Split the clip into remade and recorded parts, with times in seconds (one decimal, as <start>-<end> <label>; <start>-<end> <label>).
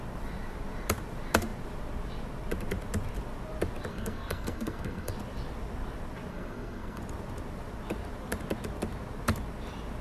0.0-3.9 recorded; 3.9-5.1 remade; 5.1-6.3 recorded; 6.3-7.0 remade; 7.0-10.0 recorded